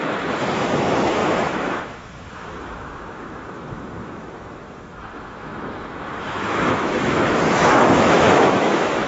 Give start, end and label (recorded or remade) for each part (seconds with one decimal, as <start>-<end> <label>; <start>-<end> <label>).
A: 0.0-9.1 remade